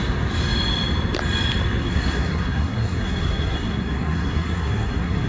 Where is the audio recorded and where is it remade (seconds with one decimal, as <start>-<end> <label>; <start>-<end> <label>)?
0.0-1.8 recorded; 1.8-5.3 remade